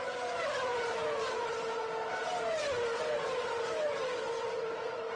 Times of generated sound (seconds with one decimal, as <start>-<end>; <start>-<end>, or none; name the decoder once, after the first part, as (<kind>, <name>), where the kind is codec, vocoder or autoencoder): none